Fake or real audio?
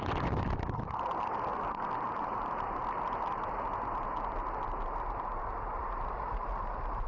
real